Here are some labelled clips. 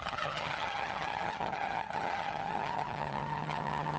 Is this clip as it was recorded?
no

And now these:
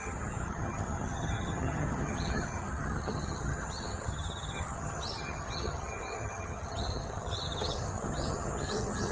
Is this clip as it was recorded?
no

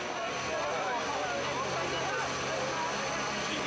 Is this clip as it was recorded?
yes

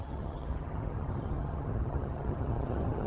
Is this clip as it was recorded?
no